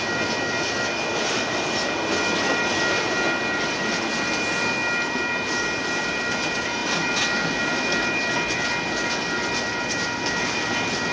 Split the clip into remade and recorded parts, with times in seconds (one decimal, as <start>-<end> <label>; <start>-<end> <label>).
0.0-11.1 recorded